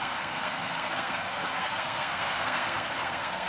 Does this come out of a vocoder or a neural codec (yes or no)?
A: yes